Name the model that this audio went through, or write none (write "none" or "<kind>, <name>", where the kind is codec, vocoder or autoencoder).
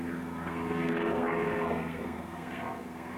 codec, SNAC